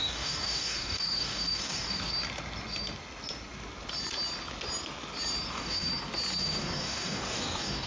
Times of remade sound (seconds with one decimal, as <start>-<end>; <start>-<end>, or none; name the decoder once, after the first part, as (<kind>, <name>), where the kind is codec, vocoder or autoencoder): 0.0-2.1 (codec, DAC); 5.5-5.9; 6.4-7.9